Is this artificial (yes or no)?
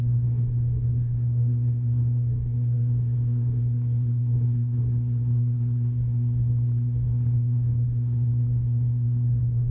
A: yes